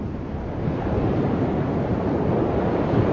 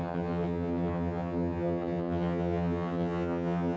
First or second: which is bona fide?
first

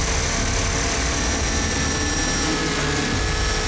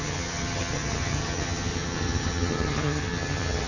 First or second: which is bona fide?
first